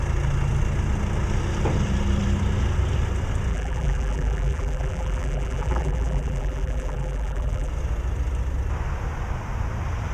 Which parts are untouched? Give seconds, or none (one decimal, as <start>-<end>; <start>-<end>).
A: 0.0-3.5; 7.7-10.1